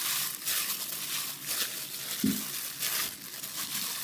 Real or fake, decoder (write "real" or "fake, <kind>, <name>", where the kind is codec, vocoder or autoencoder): real